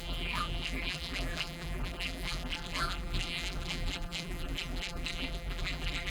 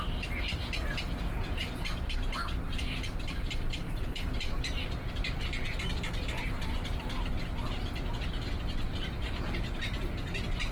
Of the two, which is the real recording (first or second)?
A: second